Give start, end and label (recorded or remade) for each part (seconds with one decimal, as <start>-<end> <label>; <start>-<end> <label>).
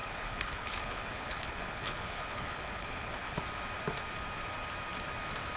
0.0-3.4 remade; 3.4-5.6 recorded